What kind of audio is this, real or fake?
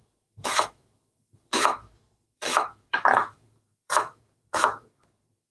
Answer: fake